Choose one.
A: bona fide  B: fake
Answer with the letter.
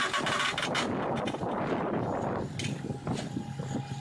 A